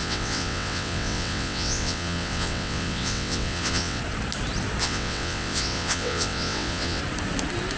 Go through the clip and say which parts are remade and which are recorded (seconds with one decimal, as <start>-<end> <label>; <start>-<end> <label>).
0.0-4.0 remade; 4.0-4.8 recorded; 4.8-7.0 remade; 7.0-7.8 recorded